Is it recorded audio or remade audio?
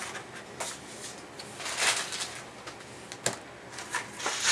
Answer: recorded